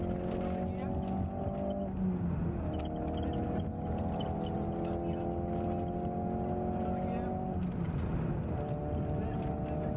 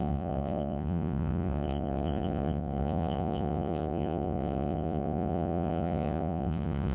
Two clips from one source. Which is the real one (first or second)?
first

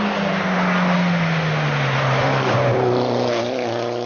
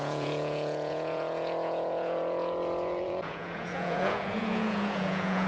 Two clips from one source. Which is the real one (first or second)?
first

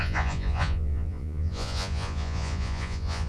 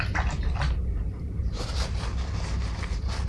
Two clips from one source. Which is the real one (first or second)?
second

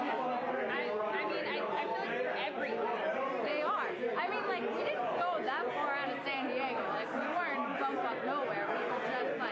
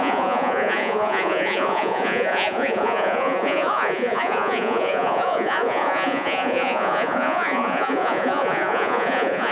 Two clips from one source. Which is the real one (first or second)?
first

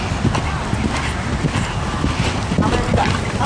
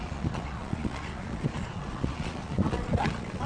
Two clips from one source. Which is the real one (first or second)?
first